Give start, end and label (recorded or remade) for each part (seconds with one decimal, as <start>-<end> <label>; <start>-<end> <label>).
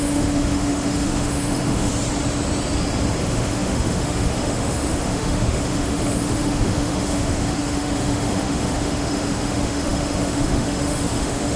0.0-1.9 remade; 1.9-3.2 recorded; 3.2-11.6 remade